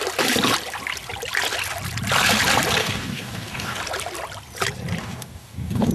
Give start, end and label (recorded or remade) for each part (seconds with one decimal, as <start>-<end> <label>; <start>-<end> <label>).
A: 0.0-2.8 recorded; 2.8-3.8 remade; 3.8-5.0 recorded; 5.0-5.9 remade